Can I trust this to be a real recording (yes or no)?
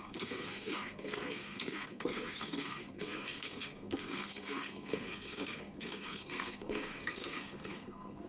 no